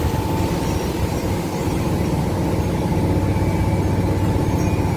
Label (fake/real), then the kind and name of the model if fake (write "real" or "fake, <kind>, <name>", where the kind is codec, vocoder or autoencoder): real